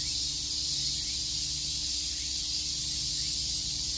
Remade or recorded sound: recorded